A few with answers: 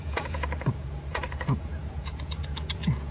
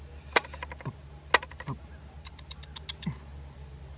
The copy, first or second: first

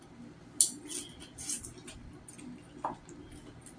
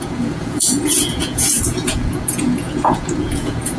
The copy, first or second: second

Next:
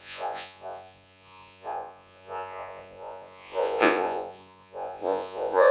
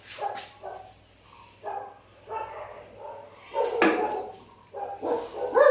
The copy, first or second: first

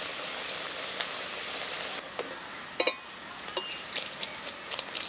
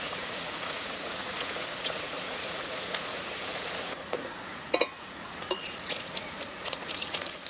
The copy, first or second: second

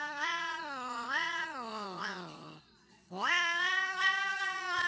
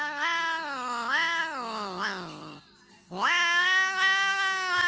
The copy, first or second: first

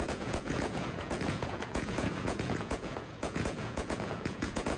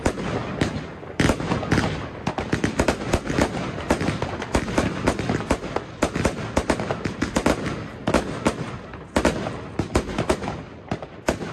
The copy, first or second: first